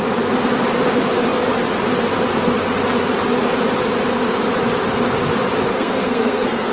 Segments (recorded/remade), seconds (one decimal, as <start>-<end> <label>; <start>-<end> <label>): 0.0-5.7 recorded; 5.7-6.7 remade